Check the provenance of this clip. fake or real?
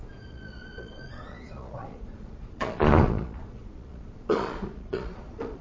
fake